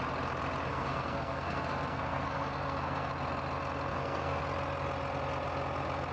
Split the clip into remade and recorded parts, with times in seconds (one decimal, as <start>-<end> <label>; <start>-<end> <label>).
0.0-0.7 recorded; 0.7-3.1 remade; 3.1-3.9 recorded; 3.9-4.4 remade; 4.4-6.1 recorded

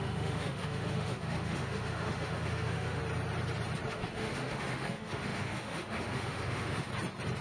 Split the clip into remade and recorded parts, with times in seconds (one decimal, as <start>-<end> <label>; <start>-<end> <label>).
0.0-3.0 remade; 3.0-3.9 recorded; 3.9-6.9 remade; 6.9-7.4 recorded

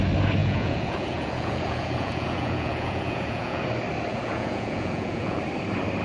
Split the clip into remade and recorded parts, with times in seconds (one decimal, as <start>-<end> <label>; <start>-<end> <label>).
0.0-0.4 recorded; 0.4-3.6 remade; 3.6-4.1 recorded; 4.1-5.4 remade; 5.4-6.0 recorded

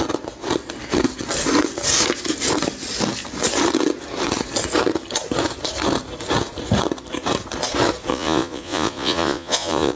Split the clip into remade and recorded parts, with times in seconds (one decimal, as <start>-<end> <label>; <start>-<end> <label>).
0.0-8.1 recorded; 8.1-10.0 remade

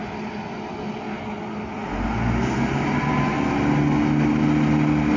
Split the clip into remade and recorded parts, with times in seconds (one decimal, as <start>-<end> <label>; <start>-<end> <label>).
0.0-5.2 recorded

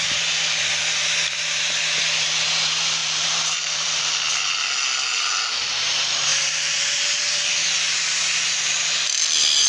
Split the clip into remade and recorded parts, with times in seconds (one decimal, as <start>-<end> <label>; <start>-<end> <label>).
0.0-3.0 recorded; 3.0-4.0 remade; 4.0-6.3 recorded; 6.3-7.7 remade; 7.7-9.7 recorded